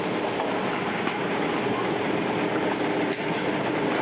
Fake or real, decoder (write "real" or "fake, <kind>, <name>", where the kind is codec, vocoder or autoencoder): real